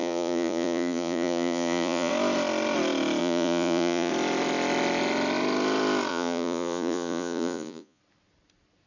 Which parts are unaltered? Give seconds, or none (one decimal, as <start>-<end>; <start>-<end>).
2.1-3.2; 4.1-6.1; 8.0-8.9